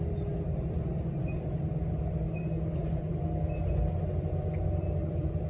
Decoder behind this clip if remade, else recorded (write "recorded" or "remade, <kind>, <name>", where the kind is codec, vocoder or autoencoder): recorded